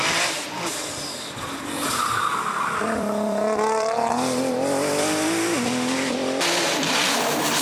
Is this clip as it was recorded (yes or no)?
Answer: no